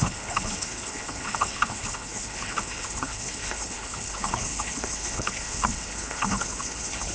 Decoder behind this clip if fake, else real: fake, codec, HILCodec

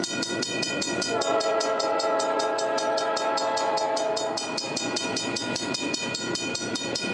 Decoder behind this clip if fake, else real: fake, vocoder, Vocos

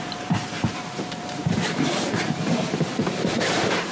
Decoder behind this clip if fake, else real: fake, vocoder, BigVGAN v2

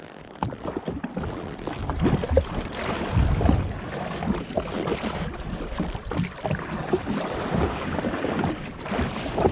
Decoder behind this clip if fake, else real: real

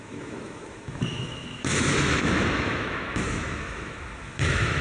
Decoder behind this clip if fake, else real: fake, autoencoder, DAC-VAE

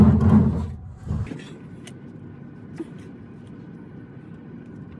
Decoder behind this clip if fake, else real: real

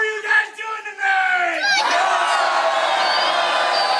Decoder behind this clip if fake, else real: real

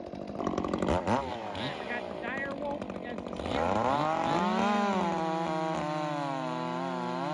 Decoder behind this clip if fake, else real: real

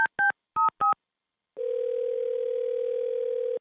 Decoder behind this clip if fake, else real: real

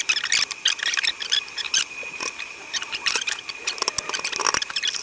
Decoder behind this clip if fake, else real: real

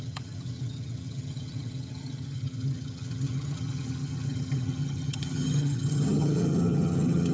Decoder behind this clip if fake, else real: fake, vocoder, HiFi-GAN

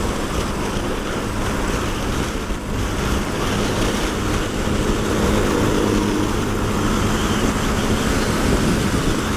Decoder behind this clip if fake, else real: real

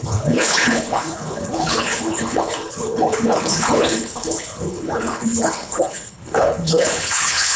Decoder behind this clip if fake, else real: fake, codec, HILCodec